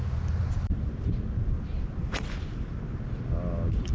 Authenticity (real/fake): real